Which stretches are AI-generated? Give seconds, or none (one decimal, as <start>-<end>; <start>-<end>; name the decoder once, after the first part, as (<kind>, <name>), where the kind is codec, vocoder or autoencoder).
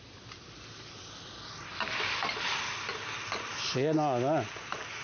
none